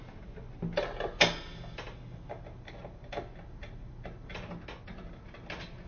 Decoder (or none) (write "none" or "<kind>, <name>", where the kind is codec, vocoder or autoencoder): none